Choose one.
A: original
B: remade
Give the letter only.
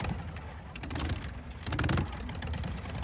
A